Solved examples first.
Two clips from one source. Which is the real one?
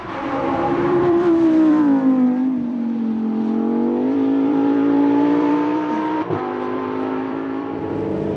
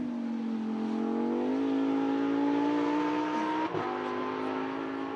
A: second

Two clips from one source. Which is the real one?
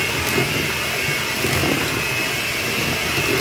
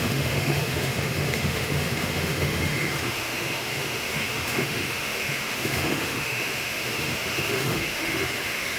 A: first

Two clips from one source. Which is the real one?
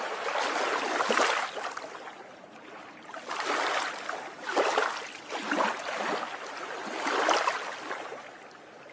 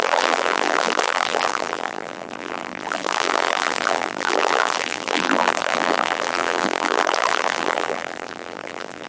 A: first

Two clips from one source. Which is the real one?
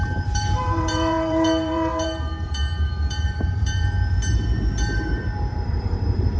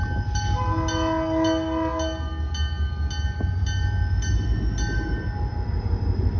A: second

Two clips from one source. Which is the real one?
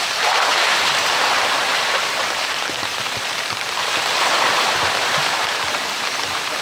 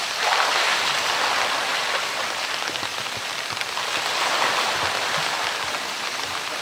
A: second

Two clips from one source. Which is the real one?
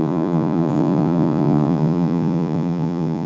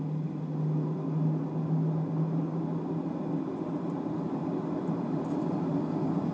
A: second